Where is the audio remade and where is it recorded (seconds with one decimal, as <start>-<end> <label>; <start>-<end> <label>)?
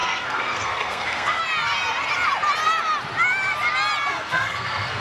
0.0-1.4 remade; 1.4-4.1 recorded; 4.1-5.0 remade